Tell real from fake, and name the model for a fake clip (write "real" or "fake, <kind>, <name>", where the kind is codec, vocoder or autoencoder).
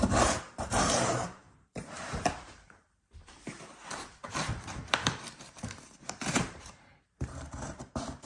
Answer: fake, vocoder, BigVGAN v2